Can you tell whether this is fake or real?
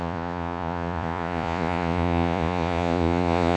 fake